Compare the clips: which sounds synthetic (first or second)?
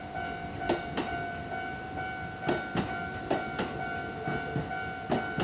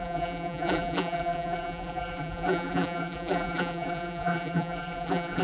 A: second